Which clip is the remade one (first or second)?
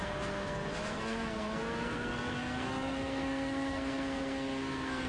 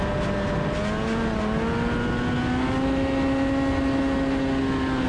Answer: first